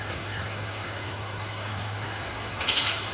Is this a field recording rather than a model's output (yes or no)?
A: no